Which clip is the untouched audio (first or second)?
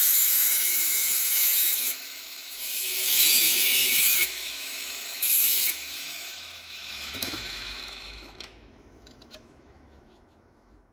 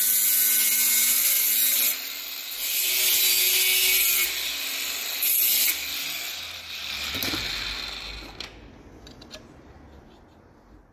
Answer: second